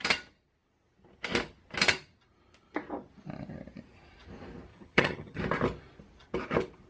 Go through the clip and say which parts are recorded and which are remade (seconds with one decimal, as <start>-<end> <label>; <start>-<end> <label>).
0.0-4.7 recorded; 4.7-5.4 remade; 5.4-6.9 recorded

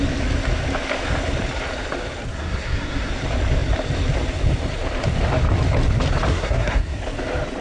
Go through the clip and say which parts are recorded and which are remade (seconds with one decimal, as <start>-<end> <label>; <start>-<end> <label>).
0.0-2.3 recorded; 2.3-3.1 remade; 3.1-6.3 recorded; 6.3-7.0 remade; 7.0-7.6 recorded

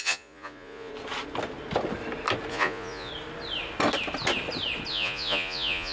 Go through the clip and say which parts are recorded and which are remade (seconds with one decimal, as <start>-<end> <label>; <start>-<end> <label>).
0.0-0.9 remade; 0.9-2.5 recorded; 2.5-3.1 remade; 3.1-4.9 recorded; 4.9-5.9 remade